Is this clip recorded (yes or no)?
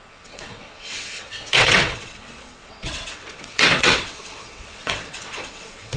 no